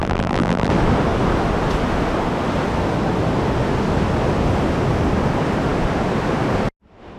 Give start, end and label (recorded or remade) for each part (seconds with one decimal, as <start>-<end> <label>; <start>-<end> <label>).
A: 0.0-0.7 remade; 0.7-7.2 recorded